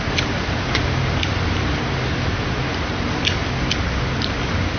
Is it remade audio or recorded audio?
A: recorded